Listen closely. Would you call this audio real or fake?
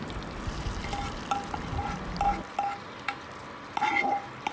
real